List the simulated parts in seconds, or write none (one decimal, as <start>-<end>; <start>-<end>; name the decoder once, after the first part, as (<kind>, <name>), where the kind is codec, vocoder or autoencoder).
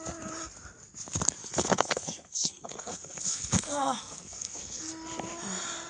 1.4-4.9 (codec, SNAC)